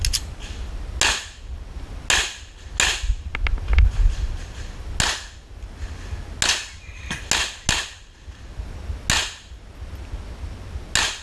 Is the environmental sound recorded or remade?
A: recorded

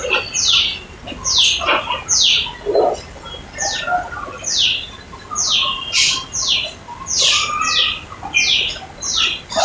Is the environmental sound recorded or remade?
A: recorded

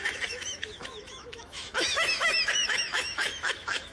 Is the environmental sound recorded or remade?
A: remade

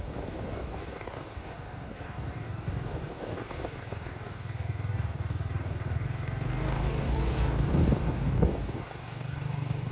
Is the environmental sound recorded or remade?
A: remade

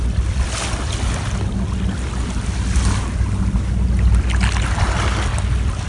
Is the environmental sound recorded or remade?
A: recorded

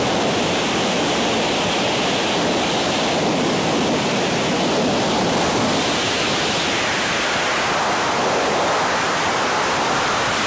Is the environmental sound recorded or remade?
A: remade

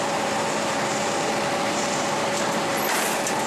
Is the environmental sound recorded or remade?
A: remade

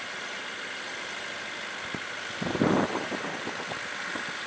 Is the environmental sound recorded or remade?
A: remade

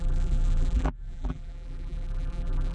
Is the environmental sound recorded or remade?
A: remade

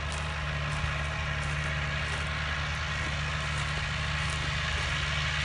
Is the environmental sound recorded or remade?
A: recorded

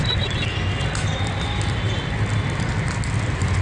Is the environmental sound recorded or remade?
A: recorded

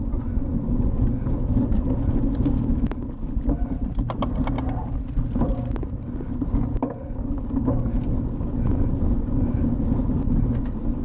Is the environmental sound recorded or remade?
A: recorded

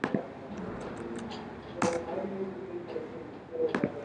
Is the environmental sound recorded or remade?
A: recorded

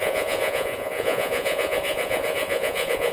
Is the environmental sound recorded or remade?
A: remade